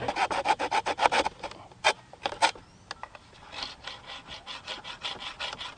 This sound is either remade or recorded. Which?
recorded